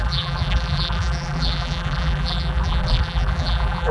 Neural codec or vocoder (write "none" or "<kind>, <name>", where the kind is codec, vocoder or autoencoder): vocoder, BigVGAN v2